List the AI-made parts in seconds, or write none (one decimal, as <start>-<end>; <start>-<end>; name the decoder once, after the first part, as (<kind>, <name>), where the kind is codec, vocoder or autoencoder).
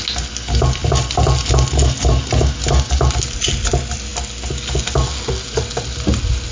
none